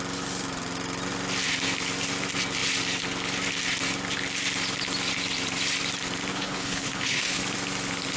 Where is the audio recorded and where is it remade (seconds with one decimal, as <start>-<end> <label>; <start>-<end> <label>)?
0.0-6.3 recorded; 6.3-7.4 remade; 7.4-8.2 recorded